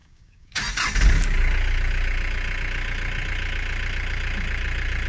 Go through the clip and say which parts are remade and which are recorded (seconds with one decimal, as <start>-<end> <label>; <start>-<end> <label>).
0.0-0.6 remade; 0.6-5.1 recorded